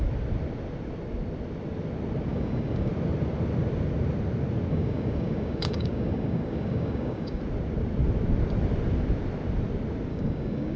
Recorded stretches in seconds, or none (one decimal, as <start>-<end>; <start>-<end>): 0.0-2.3; 2.9-4.7; 7.4-10.1